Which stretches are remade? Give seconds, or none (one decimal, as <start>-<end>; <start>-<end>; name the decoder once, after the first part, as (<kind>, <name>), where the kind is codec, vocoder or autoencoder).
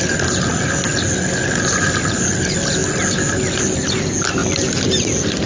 none